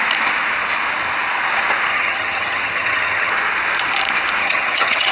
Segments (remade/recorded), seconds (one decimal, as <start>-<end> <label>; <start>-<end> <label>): 0.0-1.9 recorded; 1.9-3.3 remade; 3.3-4.4 recorded; 4.4-5.1 remade